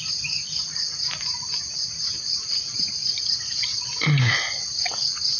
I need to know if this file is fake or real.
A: real